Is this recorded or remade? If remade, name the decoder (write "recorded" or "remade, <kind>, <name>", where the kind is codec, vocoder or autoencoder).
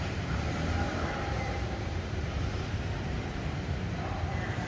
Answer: remade, vocoder, BigVGAN v2